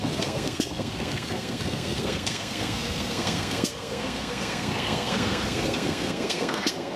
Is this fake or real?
fake